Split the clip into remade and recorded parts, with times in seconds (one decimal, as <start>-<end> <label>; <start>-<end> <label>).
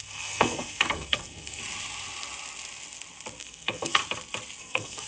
0.0-1.6 remade; 1.6-3.4 recorded; 3.4-4.0 remade; 4.0-4.6 recorded; 4.6-5.1 remade